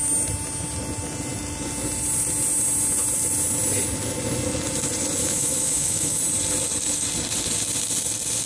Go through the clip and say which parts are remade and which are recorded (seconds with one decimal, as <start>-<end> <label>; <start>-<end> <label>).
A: 0.0-5.2 recorded; 5.2-6.2 remade; 6.2-8.5 recorded